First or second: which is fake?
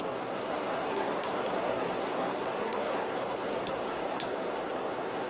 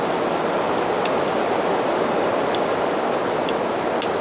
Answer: first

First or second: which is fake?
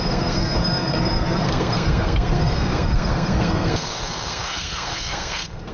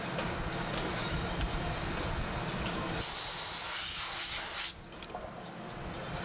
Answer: first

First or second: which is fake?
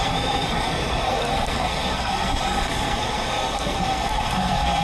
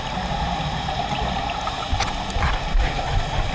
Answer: first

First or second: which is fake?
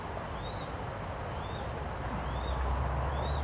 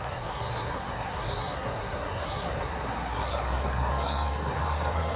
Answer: second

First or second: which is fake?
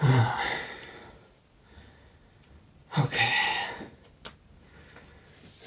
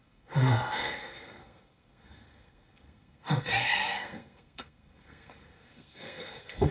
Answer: second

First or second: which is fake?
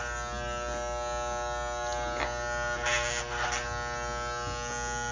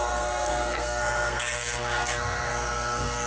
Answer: second